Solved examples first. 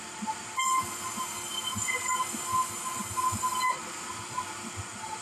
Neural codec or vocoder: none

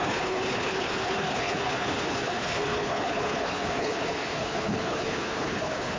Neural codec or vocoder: codec, HILCodec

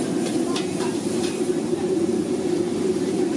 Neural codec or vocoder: vocoder, BigVGAN v2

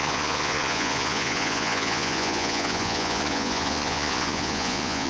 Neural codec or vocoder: vocoder, Vocos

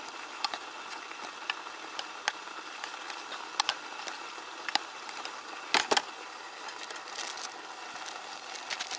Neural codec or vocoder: none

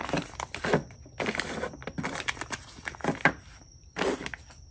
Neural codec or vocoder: none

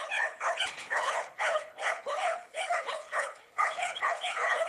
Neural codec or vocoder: codec, HILCodec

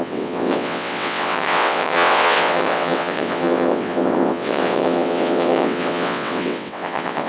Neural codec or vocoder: vocoder, WaveNeXt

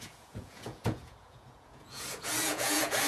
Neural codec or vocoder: vocoder, Vocos